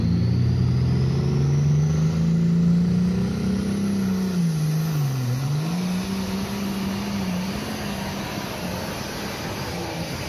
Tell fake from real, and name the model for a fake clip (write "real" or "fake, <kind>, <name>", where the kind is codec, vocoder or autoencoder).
real